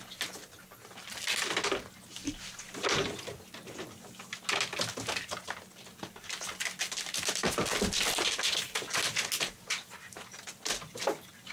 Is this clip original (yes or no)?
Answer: yes